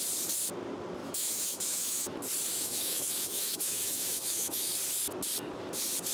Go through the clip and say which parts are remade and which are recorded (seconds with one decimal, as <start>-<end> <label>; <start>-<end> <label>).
0.0-1.0 recorded; 1.0-2.1 remade; 2.1-2.5 recorded; 2.5-4.7 remade; 4.7-6.1 recorded